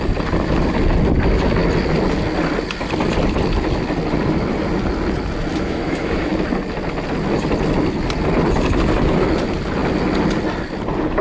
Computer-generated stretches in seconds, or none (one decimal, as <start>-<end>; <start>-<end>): 5.5-6.3